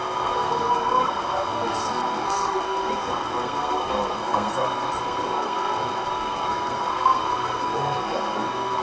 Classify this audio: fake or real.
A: fake